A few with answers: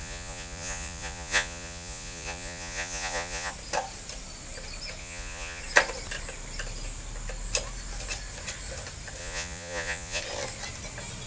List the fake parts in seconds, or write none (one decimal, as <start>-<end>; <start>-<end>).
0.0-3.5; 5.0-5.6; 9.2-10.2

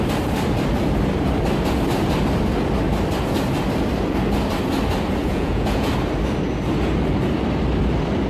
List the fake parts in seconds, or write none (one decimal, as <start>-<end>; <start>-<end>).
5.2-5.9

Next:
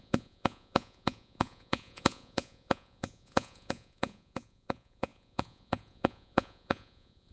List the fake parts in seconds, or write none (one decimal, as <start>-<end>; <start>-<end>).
0.0-7.3

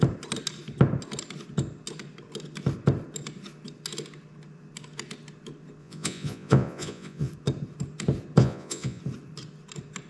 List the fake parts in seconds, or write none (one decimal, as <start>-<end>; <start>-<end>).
5.8-7.3; 8.4-9.0

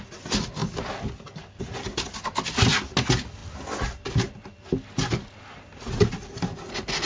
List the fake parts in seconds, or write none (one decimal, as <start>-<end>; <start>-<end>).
none

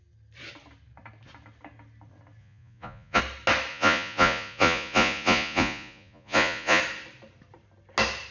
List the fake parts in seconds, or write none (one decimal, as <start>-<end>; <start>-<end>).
2.4-3.2; 3.7-6.8

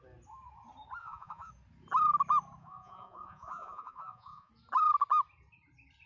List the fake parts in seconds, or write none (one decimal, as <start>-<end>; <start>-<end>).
1.0-1.5; 2.6-4.5

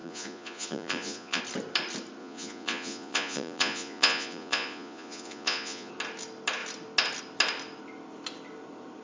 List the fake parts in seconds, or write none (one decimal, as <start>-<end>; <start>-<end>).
0.0-1.4; 2.2-5.9